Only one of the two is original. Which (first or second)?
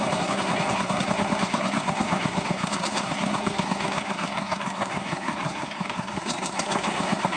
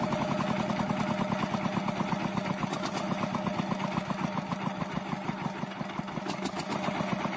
second